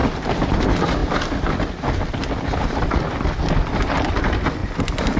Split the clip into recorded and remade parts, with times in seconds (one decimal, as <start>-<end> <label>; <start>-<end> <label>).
0.0-0.6 remade; 0.6-4.6 recorded; 4.6-5.2 remade